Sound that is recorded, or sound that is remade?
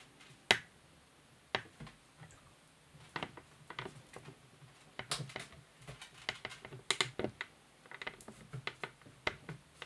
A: recorded